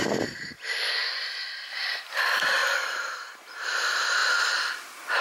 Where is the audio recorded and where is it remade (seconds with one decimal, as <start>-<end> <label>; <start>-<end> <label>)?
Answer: 0.0-5.2 recorded